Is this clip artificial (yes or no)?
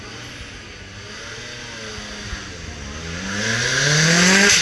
no